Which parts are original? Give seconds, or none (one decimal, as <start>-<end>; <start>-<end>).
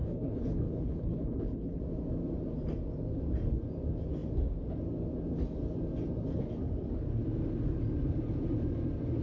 1.8-9.2